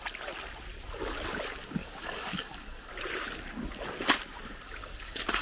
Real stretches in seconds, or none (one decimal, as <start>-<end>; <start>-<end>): 0.0-1.8; 2.9-4.8